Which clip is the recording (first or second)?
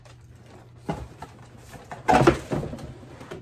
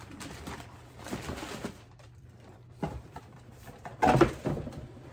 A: first